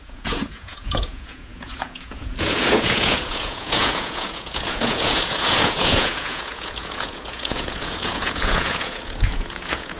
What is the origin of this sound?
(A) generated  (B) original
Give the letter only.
A